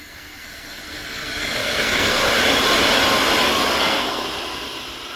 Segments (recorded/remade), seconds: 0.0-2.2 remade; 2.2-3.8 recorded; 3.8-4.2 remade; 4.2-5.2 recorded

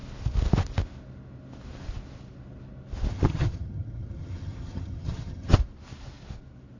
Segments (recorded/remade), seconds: 0.0-3.1 recorded; 3.1-5.6 remade; 5.6-6.8 recorded

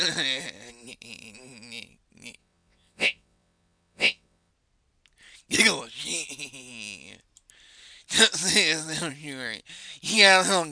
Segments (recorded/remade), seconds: 0.0-2.4 recorded; 2.4-4.5 remade; 4.5-10.7 recorded

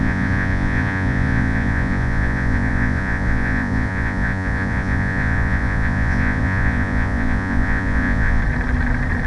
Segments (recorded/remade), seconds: 0.0-8.4 remade; 8.4-9.3 recorded

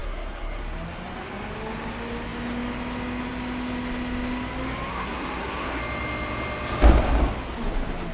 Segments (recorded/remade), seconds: 0.0-0.6 remade; 0.6-4.9 recorded; 4.9-5.8 remade; 5.8-8.1 recorded

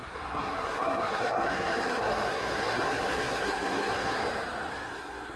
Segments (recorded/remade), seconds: 0.0-4.2 remade; 4.2-4.7 recorded; 4.7-5.4 remade

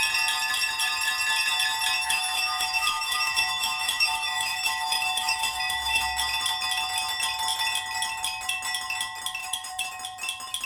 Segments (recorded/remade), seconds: 0.0-2.0 recorded; 2.0-6.0 remade; 6.0-9.4 recorded; 9.4-9.9 remade; 9.9-10.7 recorded

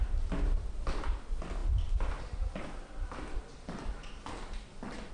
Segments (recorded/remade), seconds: 0.0-5.1 recorded